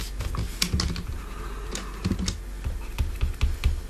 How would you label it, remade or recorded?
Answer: recorded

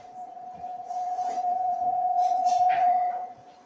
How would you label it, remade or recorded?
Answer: remade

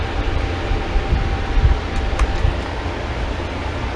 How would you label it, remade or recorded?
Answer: recorded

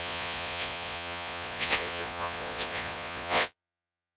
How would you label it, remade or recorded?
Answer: remade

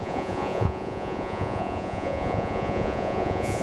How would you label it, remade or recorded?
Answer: remade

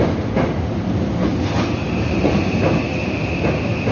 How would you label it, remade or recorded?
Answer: recorded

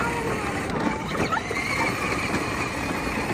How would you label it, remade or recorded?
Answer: recorded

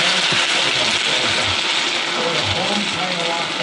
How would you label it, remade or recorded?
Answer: recorded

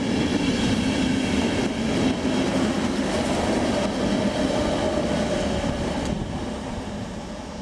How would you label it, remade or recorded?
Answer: recorded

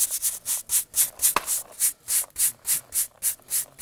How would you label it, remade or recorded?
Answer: recorded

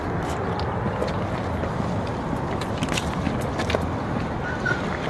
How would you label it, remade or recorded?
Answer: recorded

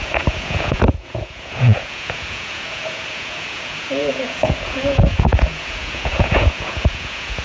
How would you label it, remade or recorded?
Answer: remade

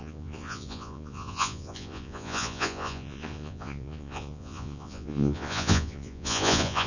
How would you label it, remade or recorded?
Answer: remade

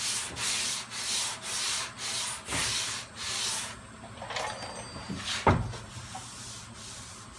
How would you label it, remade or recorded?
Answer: recorded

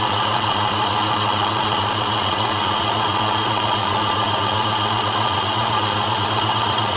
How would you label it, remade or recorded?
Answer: remade